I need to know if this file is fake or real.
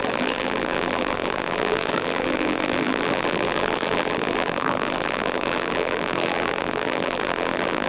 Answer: fake